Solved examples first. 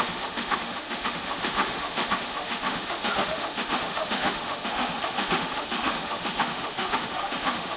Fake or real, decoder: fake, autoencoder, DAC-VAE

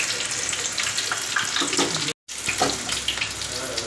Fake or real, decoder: real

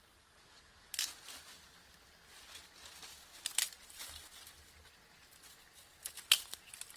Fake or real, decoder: real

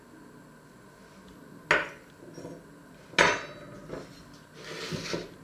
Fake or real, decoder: real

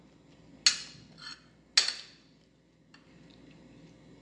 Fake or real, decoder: real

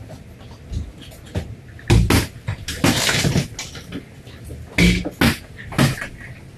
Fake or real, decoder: real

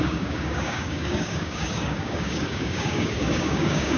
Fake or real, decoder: fake, codec, DAC